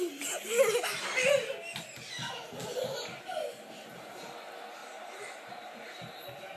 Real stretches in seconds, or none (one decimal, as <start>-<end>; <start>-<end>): 0.0-6.6